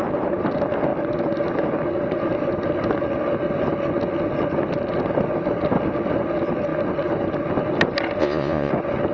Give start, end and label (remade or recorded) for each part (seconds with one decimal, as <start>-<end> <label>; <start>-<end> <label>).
0.0-8.2 recorded; 8.2-8.7 remade; 8.7-9.1 recorded